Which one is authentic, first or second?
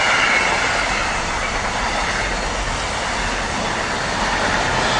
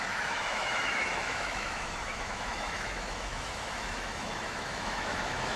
first